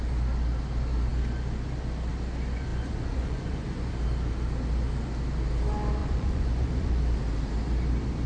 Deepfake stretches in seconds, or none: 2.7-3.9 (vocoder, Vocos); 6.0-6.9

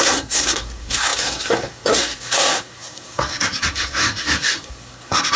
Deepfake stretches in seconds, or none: 0.0-5.4 (codec, SNAC)

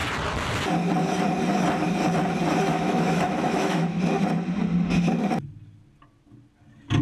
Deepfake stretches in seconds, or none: 2.7-4.0 (autoencoder, DAC-VAE)

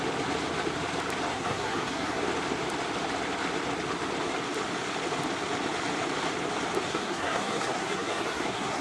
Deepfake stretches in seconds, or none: 1.3-2.2 (codec, SNAC); 6.9-8.8